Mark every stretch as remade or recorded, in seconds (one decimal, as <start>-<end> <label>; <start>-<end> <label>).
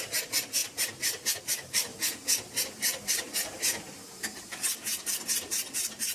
0.0-0.6 remade; 0.6-1.4 recorded; 1.4-6.1 remade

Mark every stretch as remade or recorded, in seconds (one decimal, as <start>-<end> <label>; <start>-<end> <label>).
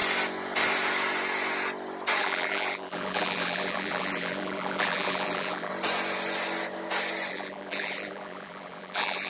0.0-2.2 recorded; 2.2-5.7 remade; 5.7-7.3 recorded; 7.3-9.3 remade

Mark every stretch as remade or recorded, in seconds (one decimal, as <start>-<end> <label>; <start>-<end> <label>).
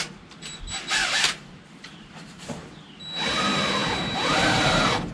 0.0-1.0 recorded; 1.0-2.9 remade; 2.9-3.8 recorded; 3.8-5.1 remade